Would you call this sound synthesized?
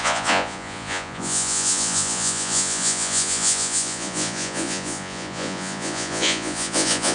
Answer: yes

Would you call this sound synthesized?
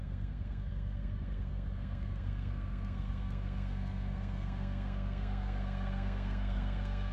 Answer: yes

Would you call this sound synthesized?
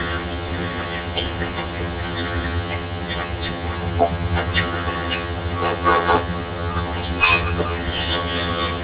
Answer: yes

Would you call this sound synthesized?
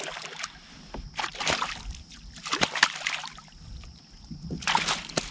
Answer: no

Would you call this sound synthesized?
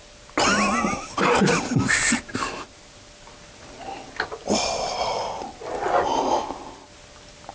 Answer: no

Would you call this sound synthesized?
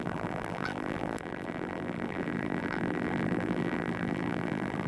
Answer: yes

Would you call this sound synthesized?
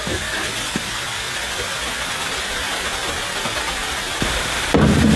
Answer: no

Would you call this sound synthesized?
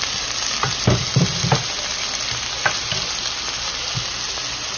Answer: no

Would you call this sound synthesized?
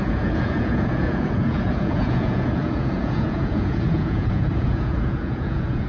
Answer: yes